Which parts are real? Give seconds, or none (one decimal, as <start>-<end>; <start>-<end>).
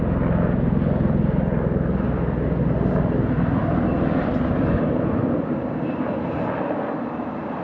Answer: 0.0-7.6